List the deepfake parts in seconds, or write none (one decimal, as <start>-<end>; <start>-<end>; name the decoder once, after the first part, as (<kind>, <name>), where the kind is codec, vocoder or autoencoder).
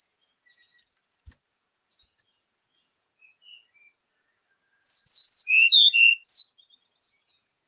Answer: 0.0-7.7 (vocoder, Vocos)